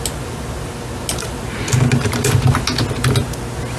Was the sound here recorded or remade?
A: recorded